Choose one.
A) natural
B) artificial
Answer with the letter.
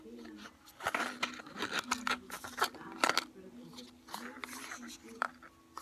A